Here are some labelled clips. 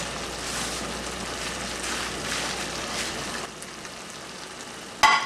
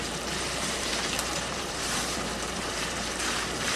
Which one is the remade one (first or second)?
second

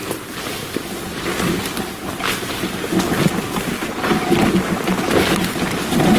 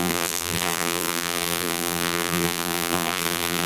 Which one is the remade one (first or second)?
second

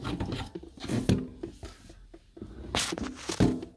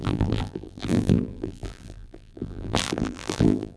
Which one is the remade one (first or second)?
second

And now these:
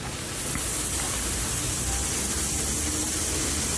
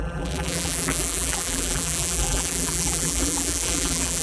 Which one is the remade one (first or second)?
second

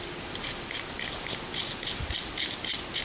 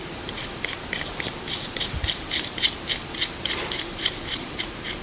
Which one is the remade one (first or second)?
second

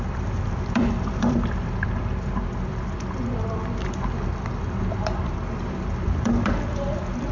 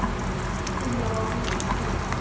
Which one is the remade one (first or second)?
first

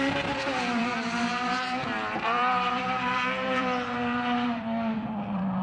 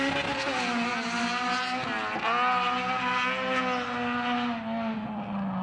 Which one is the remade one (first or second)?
first